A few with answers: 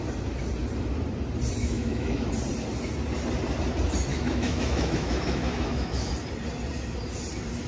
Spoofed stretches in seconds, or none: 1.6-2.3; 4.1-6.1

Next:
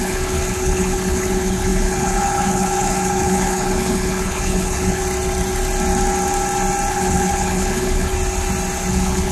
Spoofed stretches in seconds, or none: 0.0-5.0; 6.9-8.1; 8.9-9.3

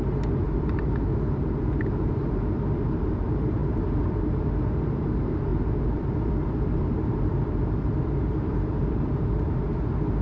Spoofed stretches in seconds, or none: 0.0-10.2

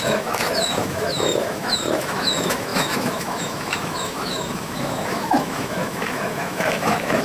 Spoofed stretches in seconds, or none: 0.0-7.2